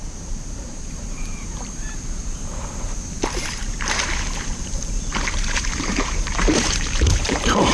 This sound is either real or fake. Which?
fake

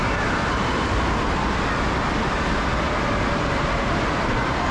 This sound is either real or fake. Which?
real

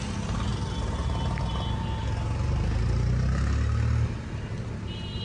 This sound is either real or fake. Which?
real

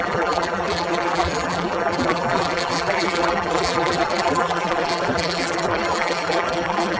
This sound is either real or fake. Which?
fake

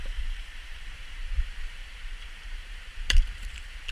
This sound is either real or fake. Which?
fake